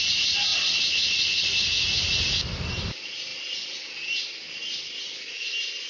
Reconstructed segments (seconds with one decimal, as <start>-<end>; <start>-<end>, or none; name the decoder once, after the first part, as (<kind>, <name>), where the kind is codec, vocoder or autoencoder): none